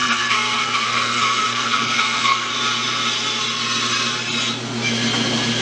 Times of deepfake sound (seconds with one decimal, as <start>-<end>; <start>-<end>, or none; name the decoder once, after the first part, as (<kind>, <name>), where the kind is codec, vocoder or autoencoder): 0.0-2.5 (codec, SNAC)